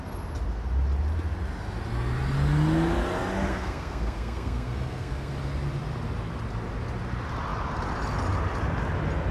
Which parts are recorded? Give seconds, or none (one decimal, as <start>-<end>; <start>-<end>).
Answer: 0.0-3.5; 5.3-9.3